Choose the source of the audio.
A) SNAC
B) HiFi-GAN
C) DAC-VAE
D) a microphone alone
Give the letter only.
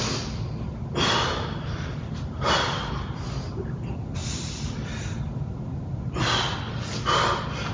D